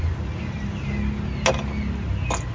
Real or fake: real